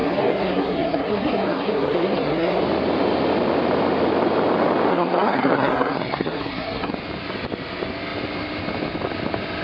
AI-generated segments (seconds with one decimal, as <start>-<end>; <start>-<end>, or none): 0.0-2.6; 4.9-6.9